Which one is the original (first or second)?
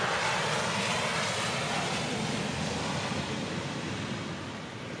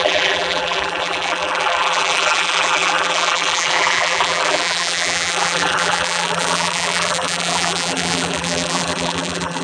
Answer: first